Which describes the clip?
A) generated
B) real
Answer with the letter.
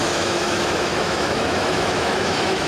A